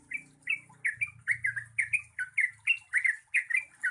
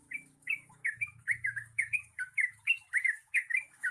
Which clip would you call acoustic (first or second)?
first